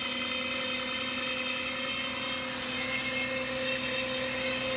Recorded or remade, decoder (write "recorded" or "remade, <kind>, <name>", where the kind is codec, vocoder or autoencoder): recorded